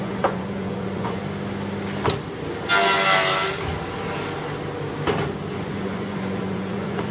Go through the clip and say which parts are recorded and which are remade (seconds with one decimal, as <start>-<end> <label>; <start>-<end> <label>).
0.0-1.2 remade; 1.2-5.5 recorded; 5.5-7.1 remade